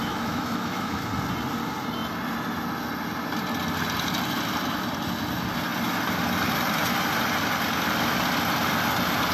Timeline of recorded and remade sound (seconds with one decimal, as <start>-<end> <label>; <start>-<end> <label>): 0.0-1.0 remade; 1.0-9.3 recorded